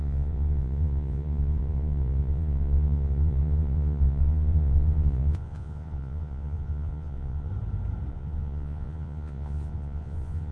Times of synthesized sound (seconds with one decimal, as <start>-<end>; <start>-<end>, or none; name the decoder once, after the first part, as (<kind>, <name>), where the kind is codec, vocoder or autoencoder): 0.0-7.5 (vocoder, Vocos); 8.1-10.5

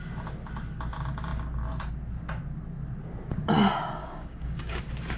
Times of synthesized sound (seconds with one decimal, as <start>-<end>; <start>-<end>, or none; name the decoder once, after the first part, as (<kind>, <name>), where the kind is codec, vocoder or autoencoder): 4.0-4.8 (codec, DAC)

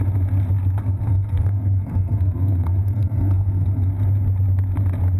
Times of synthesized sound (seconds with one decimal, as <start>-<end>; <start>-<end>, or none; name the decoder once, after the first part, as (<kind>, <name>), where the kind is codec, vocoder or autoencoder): 0.8-3.9 (codec, SNAC)

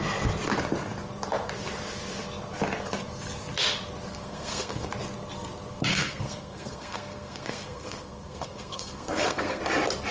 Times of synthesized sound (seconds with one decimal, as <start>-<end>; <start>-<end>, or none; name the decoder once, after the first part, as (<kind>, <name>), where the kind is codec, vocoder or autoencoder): 4.1-4.9 (codec, SNAC); 5.9-9.6

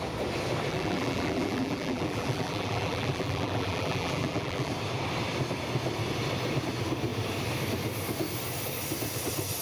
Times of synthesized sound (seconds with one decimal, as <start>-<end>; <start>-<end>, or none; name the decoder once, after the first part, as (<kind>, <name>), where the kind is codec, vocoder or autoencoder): 0.7-4.7 (vocoder, BigVGAN v2)

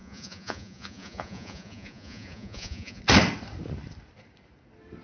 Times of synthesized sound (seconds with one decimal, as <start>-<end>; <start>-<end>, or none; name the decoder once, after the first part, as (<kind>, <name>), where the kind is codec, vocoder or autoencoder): 0.0-3.0 (vocoder, Vocos)